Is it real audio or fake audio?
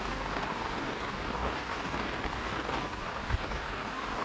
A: fake